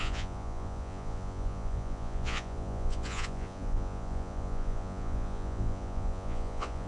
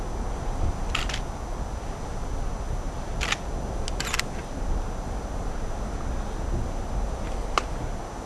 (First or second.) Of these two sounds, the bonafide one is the second